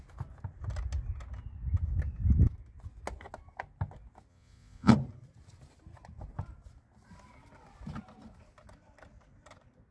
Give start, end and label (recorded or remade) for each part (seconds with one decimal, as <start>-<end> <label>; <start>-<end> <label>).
0.0-4.3 recorded; 4.3-4.9 remade; 4.9-9.9 recorded